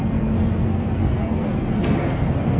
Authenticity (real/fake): fake